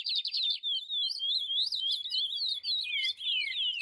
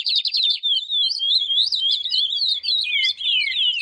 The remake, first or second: second